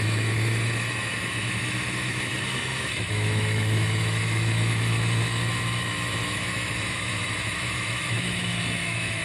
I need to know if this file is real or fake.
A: fake